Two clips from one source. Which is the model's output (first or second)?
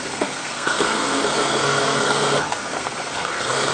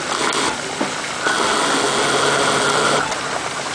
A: first